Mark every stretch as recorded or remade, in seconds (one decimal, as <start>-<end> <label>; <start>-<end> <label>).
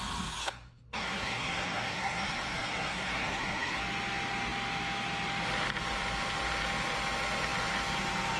0.0-0.4 recorded; 0.4-3.8 remade; 3.8-8.4 recorded